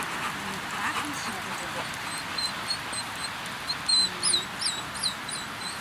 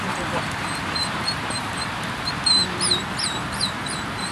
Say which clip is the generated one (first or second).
second